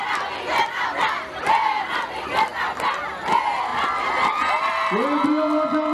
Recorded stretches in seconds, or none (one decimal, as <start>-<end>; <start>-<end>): 0.0-5.9